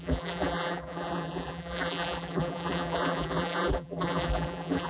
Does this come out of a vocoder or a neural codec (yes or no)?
yes